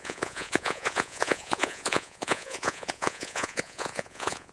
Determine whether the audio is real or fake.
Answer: fake